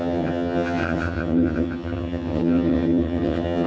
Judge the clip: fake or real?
fake